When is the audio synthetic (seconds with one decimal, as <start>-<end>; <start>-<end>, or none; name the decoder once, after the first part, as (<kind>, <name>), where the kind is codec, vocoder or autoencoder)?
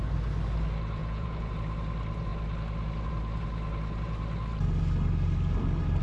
1.0-1.5 (vocoder, Vocos)